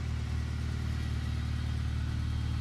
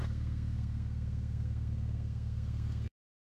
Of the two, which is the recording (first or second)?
first